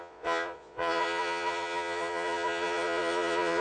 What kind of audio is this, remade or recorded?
remade